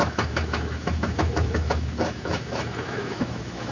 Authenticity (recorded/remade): remade